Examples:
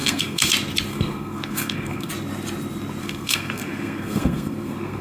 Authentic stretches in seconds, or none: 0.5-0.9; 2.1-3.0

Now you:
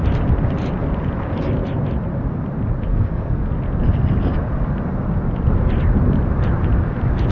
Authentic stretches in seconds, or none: 0.0-2.9; 3.5-7.3